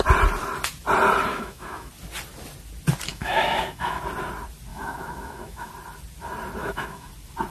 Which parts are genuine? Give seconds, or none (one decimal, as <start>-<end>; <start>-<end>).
0.0-1.3; 1.9-3.1; 4.0-4.7; 5.7-6.6; 7.1-7.5